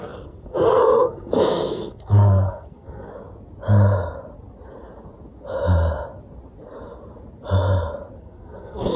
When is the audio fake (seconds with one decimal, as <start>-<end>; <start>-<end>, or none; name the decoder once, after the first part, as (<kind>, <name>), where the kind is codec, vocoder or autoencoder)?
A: 0.0-3.1 (codec, SNAC); 8.2-9.0